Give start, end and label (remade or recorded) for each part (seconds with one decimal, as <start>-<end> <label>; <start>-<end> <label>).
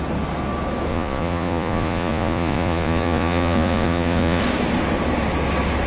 0.0-0.9 recorded; 0.9-4.4 remade; 4.4-5.9 recorded